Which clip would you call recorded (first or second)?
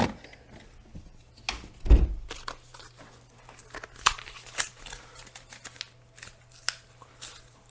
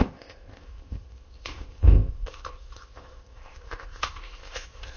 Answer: first